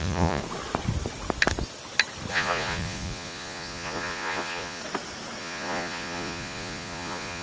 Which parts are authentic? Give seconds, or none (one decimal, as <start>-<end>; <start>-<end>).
0.4-2.3; 4.8-5.4